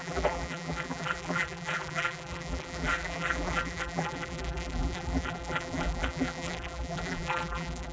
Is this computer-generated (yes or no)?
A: yes